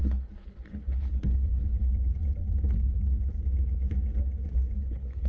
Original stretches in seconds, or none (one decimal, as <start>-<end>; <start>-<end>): 1.6-4.8